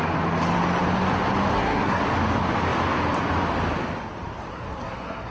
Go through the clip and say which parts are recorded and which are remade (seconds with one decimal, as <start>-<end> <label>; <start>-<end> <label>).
0.0-1.5 recorded; 1.5-2.0 remade; 2.0-4.5 recorded; 4.5-5.3 remade